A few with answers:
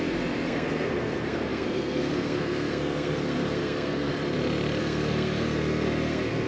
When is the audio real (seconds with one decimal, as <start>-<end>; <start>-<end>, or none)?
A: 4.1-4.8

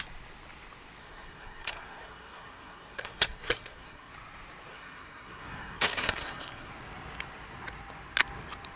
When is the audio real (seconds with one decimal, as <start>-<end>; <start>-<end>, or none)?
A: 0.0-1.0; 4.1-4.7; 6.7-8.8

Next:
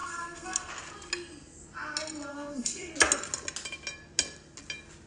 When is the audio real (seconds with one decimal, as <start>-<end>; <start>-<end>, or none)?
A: 0.7-2.3; 2.9-5.1